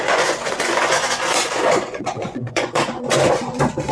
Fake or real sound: fake